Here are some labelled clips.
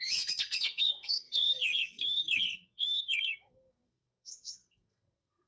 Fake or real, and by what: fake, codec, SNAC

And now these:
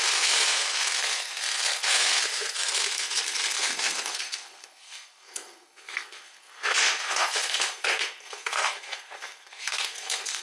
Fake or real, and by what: fake, codec, SNAC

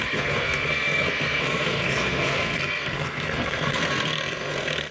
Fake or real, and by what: fake, codec, SNAC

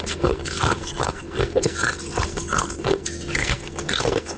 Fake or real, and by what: fake, codec, SNAC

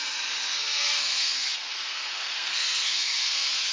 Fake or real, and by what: fake, codec, SNAC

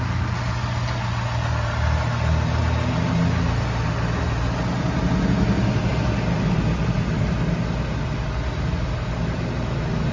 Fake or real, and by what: real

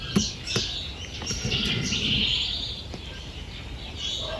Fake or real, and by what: real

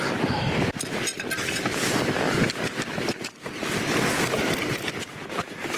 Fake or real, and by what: real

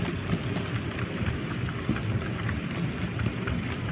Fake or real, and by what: real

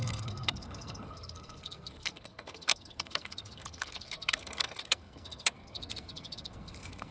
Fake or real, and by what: fake, codec, SNAC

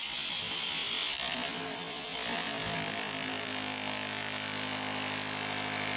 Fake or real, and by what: real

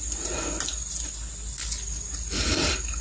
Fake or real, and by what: real